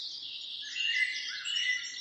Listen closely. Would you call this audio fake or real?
real